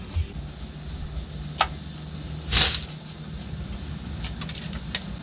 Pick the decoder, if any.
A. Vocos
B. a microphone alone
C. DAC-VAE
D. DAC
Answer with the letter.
B